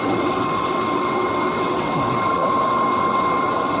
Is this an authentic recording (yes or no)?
no